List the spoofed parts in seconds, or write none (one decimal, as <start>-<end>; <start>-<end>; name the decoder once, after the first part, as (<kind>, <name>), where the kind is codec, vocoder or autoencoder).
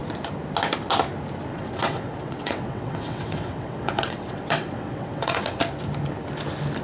1.5-5.6 (vocoder, WaveNeXt)